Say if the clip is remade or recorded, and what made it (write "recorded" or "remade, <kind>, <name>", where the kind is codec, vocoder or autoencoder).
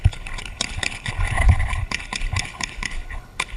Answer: remade, codec, HILCodec